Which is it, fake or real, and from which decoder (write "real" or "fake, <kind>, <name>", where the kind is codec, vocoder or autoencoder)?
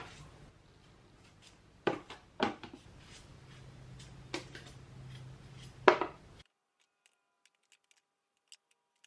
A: real